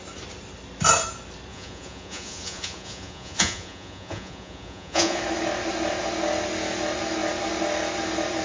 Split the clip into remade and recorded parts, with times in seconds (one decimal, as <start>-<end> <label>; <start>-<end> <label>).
0.0-1.5 recorded; 1.5-5.2 remade; 5.2-8.4 recorded